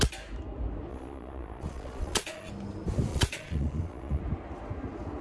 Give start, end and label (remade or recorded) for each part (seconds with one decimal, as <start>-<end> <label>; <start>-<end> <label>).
0.0-0.9 recorded; 0.9-2.5 remade; 2.5-3.1 recorded; 3.1-4.2 remade; 4.2-5.2 recorded